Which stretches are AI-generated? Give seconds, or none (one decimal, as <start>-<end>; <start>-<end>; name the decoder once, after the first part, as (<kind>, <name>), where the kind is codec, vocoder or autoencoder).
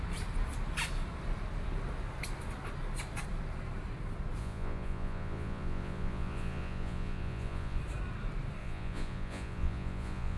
4.4-7.8 (vocoder, Vocos); 8.6-10.4